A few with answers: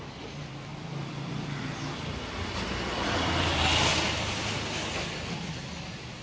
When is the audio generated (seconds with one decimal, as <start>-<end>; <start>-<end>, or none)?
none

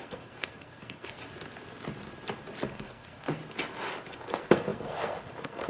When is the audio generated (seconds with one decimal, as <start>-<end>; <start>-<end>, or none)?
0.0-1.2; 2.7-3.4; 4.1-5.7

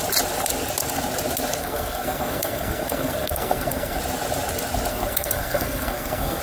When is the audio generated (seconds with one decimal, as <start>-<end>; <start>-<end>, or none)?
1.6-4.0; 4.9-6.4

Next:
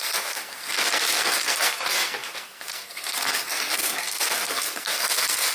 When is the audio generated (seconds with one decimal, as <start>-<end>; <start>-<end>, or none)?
0.0-5.5

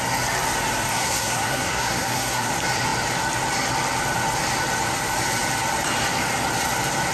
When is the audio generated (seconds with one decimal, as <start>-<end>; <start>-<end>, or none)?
0.9-2.5

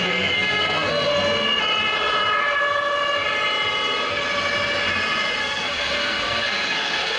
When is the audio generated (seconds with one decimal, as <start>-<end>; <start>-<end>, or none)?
0.0-1.1; 5.4-7.2